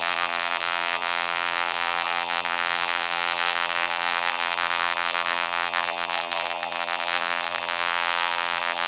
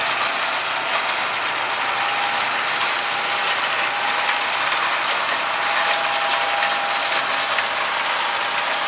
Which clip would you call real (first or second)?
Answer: second